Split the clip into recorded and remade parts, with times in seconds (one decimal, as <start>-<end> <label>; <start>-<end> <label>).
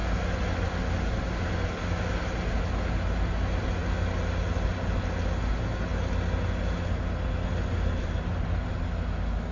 0.0-9.5 recorded